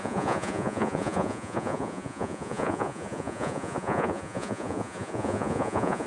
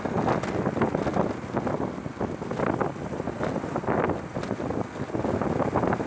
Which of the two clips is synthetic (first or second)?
first